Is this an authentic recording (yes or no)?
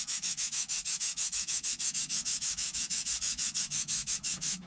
no